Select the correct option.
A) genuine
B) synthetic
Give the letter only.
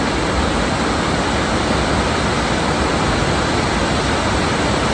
A